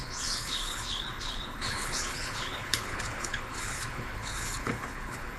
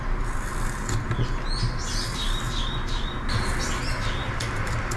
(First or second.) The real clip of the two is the second